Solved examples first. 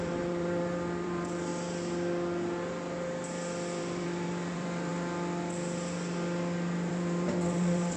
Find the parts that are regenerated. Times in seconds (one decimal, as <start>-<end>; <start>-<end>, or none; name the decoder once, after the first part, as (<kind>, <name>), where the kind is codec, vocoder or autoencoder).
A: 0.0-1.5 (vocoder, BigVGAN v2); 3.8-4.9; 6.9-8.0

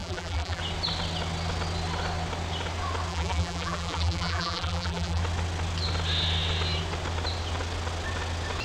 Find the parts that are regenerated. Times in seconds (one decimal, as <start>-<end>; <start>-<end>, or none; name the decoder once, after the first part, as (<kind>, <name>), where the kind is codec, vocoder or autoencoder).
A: 0.0-0.6 (vocoder, BigVGAN v2); 3.1-5.2

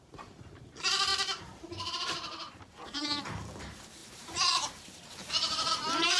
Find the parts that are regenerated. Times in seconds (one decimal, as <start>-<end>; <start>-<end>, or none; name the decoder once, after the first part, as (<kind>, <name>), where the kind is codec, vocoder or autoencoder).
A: 0.0-6.2 (vocoder, BigVGAN v2)

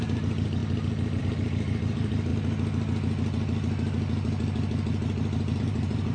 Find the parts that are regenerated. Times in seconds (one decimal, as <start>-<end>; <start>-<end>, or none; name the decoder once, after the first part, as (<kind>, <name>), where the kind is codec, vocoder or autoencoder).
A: 0.0-0.6 (vocoder, BigVGAN v2); 1.2-2.3; 5.6-6.1

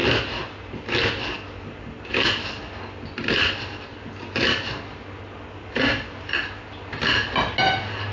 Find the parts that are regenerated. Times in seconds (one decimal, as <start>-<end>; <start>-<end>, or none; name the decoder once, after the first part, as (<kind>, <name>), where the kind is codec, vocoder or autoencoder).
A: 0.0-0.6 (vocoder, BigVGAN v2)

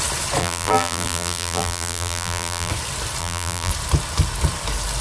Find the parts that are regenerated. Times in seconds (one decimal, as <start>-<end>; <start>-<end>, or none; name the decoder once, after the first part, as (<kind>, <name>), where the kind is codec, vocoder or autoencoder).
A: 0.4-2.7 (vocoder, BigVGAN v2); 3.2-3.7

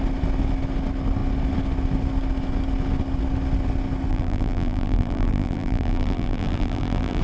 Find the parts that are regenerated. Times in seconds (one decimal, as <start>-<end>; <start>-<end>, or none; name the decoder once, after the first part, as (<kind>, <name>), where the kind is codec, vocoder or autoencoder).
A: 4.1-7.2 (vocoder, BigVGAN v2)

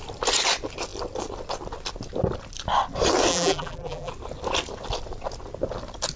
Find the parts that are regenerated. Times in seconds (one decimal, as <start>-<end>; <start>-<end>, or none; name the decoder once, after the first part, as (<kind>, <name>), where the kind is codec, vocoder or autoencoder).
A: 3.3-4.1 (vocoder, BigVGAN v2)